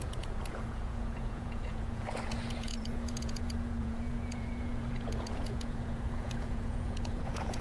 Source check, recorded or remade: remade